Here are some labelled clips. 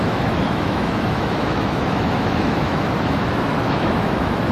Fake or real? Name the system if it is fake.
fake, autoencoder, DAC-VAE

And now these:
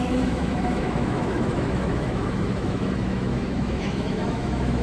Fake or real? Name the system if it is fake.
fake, autoencoder, DAC-VAE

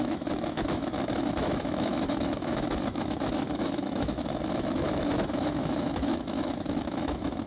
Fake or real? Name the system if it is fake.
fake, autoencoder, DAC-VAE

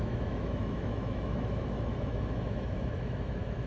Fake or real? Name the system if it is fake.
fake, autoencoder, DAC-VAE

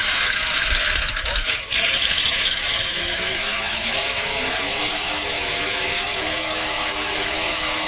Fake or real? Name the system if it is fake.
fake, autoencoder, DAC-VAE